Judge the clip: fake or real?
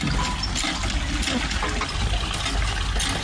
real